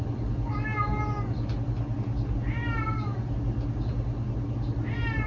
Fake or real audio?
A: real